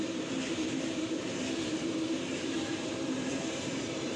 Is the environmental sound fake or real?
fake